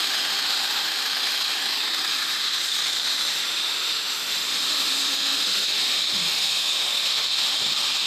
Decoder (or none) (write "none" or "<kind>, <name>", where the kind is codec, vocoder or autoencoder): autoencoder, DAC-VAE